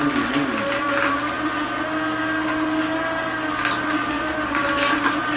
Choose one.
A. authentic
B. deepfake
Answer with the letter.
A